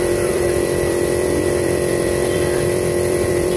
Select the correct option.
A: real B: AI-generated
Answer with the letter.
B